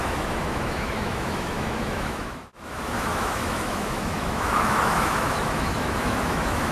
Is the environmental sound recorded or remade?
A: remade